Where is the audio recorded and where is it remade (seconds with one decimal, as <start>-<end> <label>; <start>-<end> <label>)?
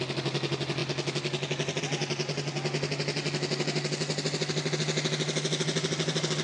0.0-6.4 recorded